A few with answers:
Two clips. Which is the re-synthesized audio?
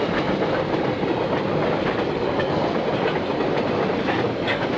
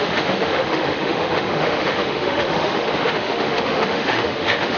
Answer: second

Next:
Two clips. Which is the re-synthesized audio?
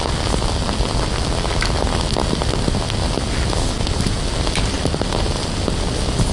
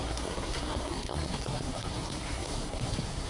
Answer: second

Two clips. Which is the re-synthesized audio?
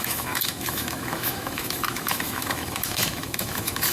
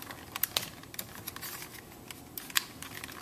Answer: first